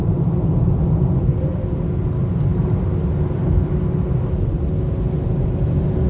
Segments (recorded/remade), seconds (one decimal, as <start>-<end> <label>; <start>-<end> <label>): 0.0-6.1 recorded